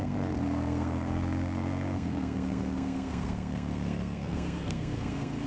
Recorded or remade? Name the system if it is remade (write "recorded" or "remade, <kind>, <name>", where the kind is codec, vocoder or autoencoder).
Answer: remade, codec, SNAC